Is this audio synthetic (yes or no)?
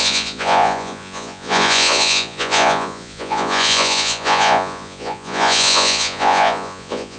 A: yes